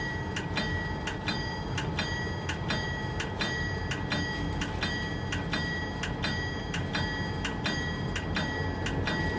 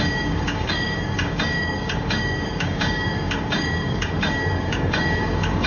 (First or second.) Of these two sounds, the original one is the first